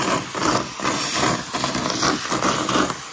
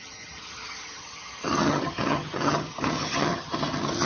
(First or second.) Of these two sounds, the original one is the first